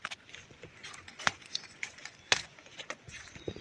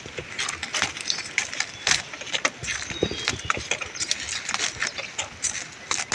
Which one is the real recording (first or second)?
second